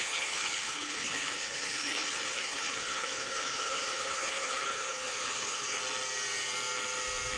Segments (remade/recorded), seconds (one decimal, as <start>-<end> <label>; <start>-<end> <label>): 0.0-5.8 remade; 5.8-7.4 recorded